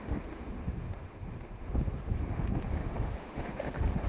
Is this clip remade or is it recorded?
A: remade